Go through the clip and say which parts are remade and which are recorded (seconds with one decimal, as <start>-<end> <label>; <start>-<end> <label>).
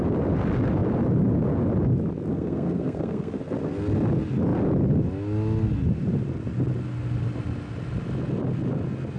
0.0-2.3 recorded; 2.3-3.4 remade; 3.4-9.2 recorded